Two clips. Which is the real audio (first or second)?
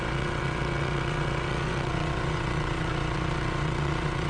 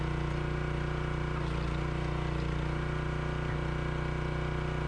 second